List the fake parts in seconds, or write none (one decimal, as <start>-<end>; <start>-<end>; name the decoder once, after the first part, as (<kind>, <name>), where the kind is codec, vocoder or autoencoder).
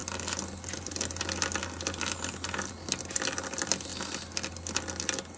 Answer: none